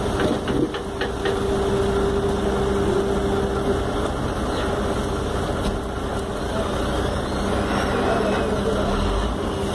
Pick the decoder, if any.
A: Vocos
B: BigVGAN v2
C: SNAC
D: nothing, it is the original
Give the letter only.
D